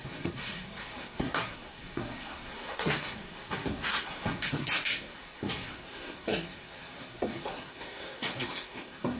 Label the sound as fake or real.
fake